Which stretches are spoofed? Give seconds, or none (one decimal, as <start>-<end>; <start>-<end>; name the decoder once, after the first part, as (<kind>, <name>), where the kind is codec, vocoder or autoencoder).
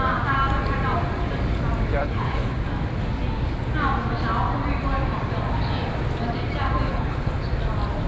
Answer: 2.0-2.6 (codec, HILCodec); 6.9-7.4